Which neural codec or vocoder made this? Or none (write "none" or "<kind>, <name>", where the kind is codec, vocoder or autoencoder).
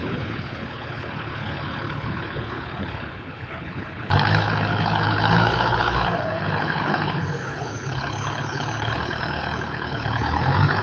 codec, HILCodec